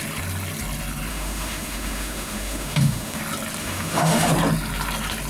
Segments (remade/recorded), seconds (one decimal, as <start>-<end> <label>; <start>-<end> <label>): 0.0-1.1 recorded; 1.1-3.2 remade; 3.2-3.6 recorded; 3.6-4.3 remade; 4.3-5.3 recorded